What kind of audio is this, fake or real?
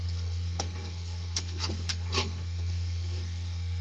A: fake